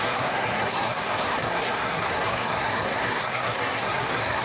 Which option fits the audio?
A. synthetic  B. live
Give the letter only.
A